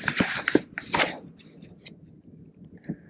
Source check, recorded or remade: remade